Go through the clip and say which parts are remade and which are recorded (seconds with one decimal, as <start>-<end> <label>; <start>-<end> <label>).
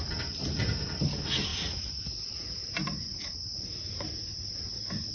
0.0-5.1 recorded